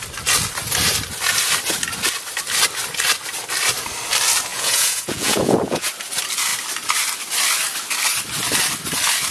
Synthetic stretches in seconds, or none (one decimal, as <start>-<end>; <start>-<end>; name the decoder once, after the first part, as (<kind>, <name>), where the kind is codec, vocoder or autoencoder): 4.5-5.9 (vocoder, Vocos)